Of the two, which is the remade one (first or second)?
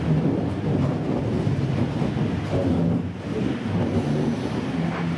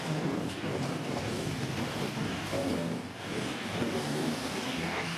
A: second